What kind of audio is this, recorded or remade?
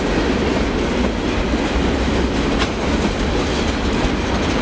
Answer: recorded